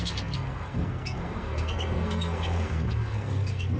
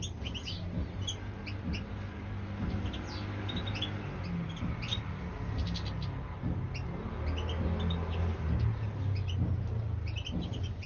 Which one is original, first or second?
second